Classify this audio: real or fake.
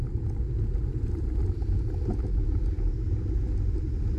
real